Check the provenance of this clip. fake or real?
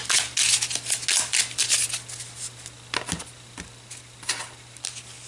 real